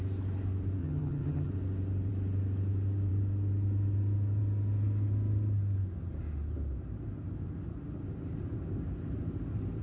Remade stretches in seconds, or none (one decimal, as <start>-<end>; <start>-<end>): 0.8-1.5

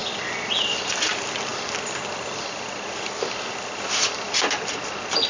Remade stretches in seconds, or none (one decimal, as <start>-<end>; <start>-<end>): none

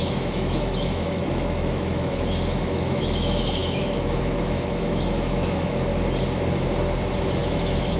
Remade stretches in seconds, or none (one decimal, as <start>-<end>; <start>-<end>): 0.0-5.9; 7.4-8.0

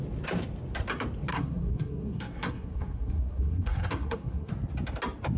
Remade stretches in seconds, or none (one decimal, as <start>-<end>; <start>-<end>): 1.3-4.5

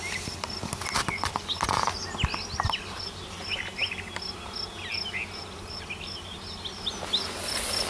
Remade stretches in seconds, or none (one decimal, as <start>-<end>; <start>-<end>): none